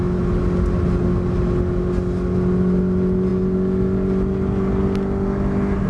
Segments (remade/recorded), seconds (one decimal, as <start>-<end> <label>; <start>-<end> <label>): 0.0-5.9 recorded

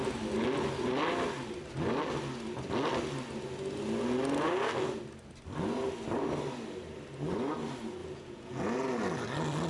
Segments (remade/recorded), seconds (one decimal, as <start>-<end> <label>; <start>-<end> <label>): 0.0-8.0 recorded; 8.0-8.6 remade; 8.6-9.7 recorded

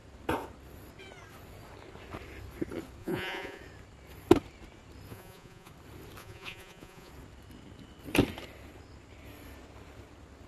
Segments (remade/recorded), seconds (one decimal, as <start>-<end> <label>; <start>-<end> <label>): 0.0-3.0 recorded; 3.0-3.6 remade; 3.6-5.1 recorded; 5.1-5.7 remade; 5.7-6.2 recorded; 6.2-7.1 remade; 7.1-10.5 recorded

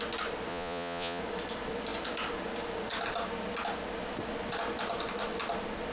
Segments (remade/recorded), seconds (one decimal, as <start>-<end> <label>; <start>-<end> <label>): 0.0-0.5 recorded; 0.5-1.2 remade; 1.2-5.9 recorded

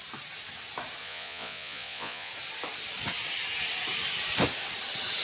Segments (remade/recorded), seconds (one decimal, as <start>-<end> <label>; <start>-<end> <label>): 0.0-1.0 recorded; 1.0-2.3 remade; 2.3-5.2 recorded